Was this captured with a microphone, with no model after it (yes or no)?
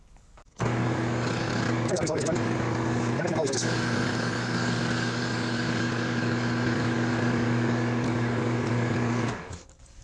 no